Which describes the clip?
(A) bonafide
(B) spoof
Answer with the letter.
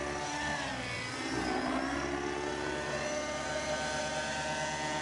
A